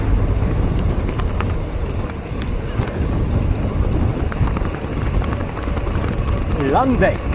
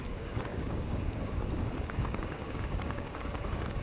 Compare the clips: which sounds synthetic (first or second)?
second